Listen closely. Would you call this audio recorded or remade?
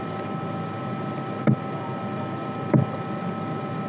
recorded